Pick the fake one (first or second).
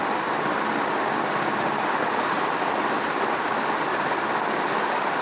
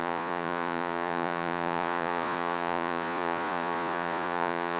second